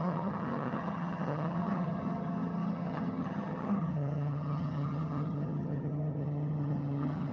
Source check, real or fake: fake